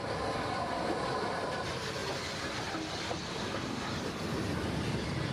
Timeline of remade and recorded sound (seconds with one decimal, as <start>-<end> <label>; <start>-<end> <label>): 0.0-2.0 remade; 2.0-3.1 recorded; 3.1-5.3 remade

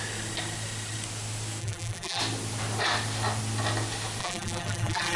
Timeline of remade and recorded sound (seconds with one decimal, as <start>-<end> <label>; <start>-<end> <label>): 0.0-1.6 recorded; 1.6-2.2 remade; 2.2-4.2 recorded; 4.2-5.2 remade

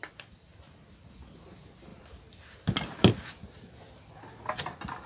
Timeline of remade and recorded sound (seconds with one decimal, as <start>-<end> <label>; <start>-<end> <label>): 0.0-5.1 recorded

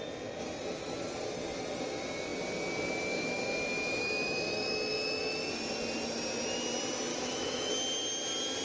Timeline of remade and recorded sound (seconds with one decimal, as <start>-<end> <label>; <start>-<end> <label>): 0.0-4.0 recorded; 4.0-5.5 remade; 5.5-7.1 recorded; 7.1-7.7 remade; 7.7-8.6 recorded

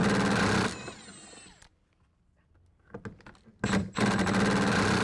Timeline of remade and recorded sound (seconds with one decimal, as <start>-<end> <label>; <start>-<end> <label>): 0.0-5.0 recorded

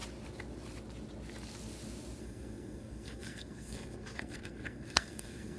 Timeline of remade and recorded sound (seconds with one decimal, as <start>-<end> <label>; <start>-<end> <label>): 0.0-2.2 recorded; 2.2-5.6 remade

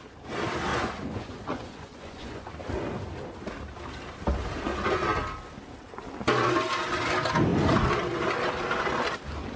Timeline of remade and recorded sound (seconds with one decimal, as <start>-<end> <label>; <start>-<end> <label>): 0.0-0.7 recorded; 0.7-2.5 remade; 2.5-9.6 recorded

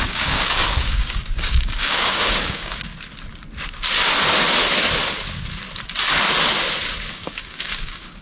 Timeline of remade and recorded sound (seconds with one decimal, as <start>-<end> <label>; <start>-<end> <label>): 0.0-2.9 remade; 2.9-7.1 recorded; 7.1-8.2 remade